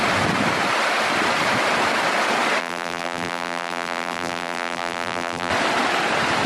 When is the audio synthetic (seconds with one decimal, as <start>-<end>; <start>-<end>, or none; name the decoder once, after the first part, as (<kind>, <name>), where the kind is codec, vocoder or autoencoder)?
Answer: 2.6-5.5 (vocoder, BigVGAN v2)